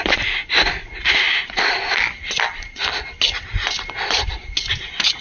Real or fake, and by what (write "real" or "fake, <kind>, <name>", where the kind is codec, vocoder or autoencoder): real